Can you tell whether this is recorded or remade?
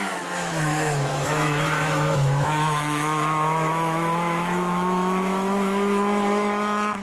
remade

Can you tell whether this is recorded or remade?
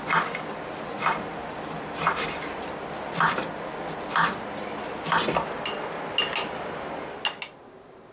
recorded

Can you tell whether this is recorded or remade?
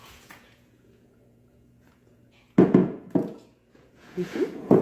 remade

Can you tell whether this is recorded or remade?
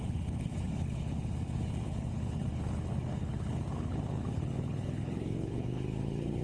remade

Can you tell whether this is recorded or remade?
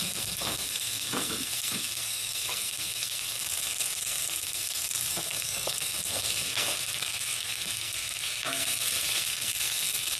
remade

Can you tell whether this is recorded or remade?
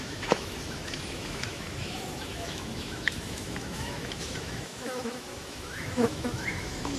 remade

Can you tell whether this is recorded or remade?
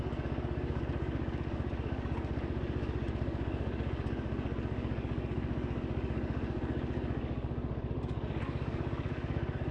remade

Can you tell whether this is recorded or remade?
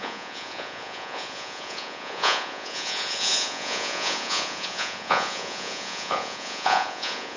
remade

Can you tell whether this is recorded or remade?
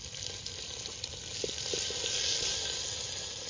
recorded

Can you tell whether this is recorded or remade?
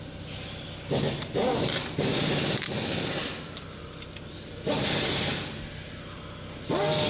recorded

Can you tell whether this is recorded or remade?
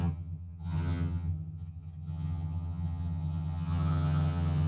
remade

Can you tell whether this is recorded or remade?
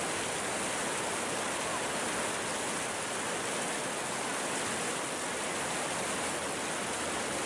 recorded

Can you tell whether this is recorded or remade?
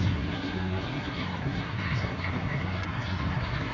remade